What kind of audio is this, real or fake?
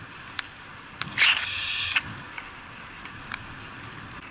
real